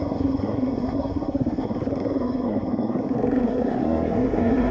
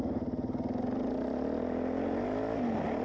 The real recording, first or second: second